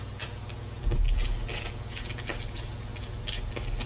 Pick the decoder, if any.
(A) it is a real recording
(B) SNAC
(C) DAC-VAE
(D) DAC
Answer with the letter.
A